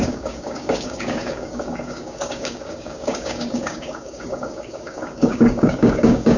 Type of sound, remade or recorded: remade